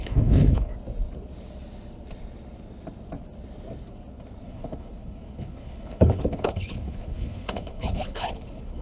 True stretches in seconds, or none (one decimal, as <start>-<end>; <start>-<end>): 0.7-4.4